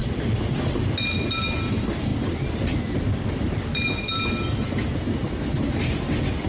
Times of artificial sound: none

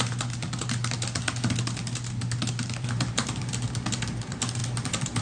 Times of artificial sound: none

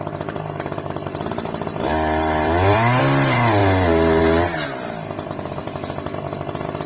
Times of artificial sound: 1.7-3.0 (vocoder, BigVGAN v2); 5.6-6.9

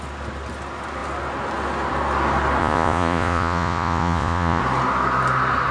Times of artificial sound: 2.6-4.6 (vocoder, Vocos)

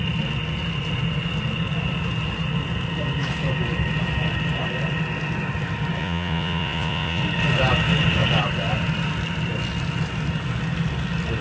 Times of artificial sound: 6.0-7.2 (vocoder, Vocos)

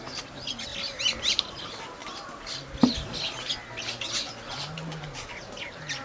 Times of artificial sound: 0.0-0.7 (vocoder, BigVGAN v2); 1.3-2.0; 5.6-6.0

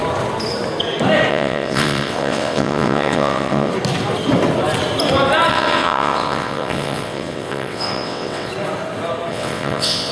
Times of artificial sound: 1.3-3.7 (vocoder, WaveNeXt); 5.5-8.5; 9.3-10.1